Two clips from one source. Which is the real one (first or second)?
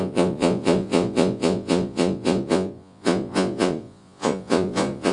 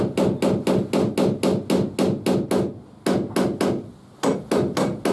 second